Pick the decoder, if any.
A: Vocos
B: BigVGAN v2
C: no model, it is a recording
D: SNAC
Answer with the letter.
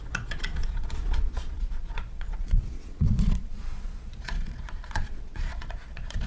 A